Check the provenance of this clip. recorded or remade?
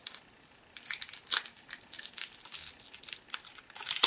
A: recorded